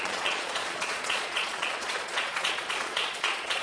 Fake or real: fake